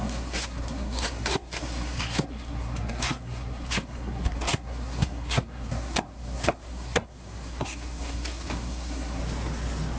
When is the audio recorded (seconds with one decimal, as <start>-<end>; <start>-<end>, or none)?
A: 9.2-10.0